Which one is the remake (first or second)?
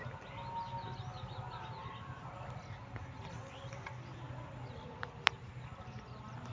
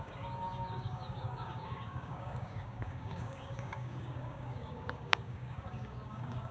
second